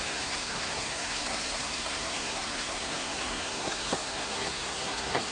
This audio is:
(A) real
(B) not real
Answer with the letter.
B